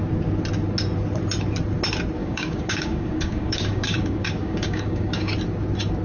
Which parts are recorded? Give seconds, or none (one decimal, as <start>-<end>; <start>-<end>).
0.0-2.2; 5.3-6.0